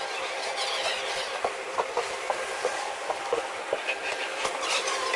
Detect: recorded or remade remade